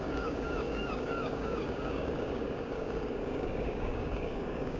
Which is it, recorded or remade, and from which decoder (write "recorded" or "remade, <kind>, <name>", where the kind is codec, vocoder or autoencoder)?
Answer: remade, codec, DAC